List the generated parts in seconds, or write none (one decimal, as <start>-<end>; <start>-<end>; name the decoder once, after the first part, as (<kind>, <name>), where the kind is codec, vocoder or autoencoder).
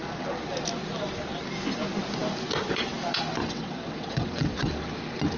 3.4-4.7 (vocoder, WaveNeXt)